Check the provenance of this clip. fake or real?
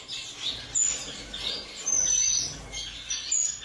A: real